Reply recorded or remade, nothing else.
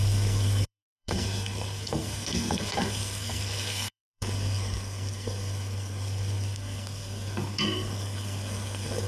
remade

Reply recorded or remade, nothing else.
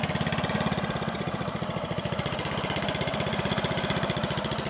recorded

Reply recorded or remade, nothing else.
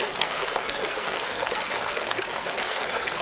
remade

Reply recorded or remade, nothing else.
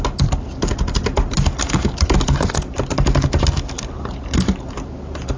recorded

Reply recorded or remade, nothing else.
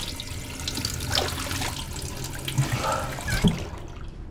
recorded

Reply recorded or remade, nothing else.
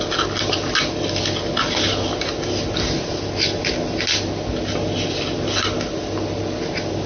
recorded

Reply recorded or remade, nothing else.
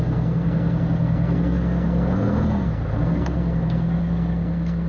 remade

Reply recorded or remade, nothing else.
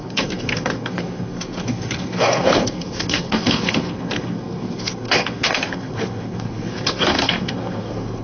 remade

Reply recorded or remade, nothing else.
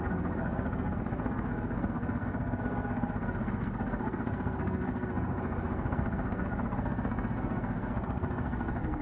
remade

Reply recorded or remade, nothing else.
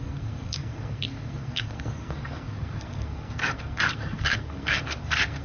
remade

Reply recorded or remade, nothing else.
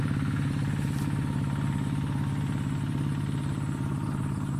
recorded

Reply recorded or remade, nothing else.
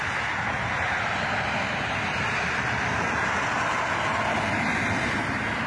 recorded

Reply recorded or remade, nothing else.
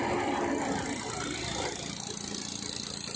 recorded